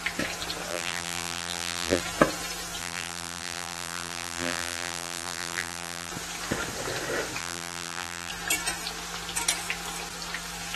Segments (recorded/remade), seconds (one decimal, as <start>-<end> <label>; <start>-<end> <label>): 0.0-0.7 recorded; 0.7-2.0 remade; 2.0-2.8 recorded; 2.8-6.1 remade; 6.1-7.4 recorded; 7.4-8.3 remade; 8.3-10.8 recorded